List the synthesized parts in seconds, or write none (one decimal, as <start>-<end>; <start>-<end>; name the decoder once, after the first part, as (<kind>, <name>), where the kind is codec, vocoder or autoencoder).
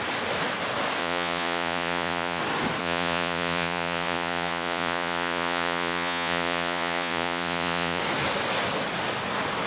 1.0-2.4 (vocoder, Vocos); 2.8-8.0